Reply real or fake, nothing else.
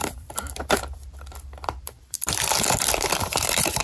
fake